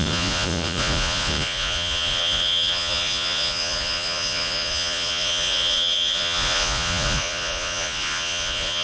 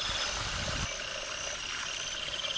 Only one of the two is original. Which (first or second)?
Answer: second